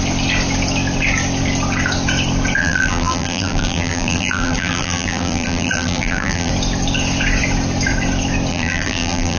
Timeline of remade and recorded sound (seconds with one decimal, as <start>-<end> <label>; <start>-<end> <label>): 0.0-2.6 recorded; 2.6-6.5 remade; 6.5-8.5 recorded; 8.5-9.4 remade